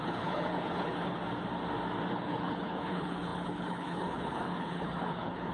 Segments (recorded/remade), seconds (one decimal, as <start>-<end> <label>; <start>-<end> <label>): 0.0-1.2 remade; 1.2-2.1 recorded; 2.1-5.5 remade